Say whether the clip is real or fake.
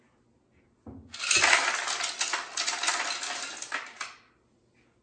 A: real